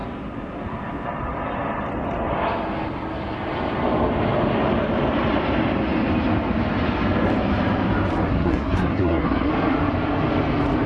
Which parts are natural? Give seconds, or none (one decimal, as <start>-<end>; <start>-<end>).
0.0-8.3; 9.5-10.9